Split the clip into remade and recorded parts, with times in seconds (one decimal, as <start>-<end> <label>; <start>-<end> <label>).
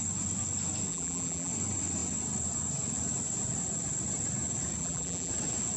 0.0-0.9 recorded; 0.9-1.5 remade; 1.5-4.8 recorded; 4.8-5.3 remade; 5.3-5.8 recorded